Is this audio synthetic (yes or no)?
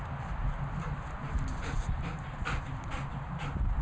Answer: no